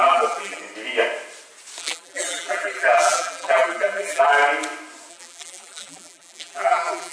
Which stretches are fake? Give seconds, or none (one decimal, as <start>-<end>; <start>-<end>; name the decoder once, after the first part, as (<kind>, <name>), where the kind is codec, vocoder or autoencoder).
0.0-0.6 (vocoder, BigVGAN v2); 1.8-4.3; 5.1-7.1